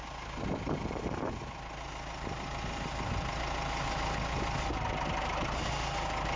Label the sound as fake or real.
real